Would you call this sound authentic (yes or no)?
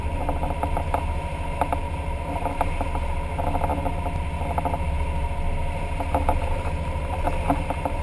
yes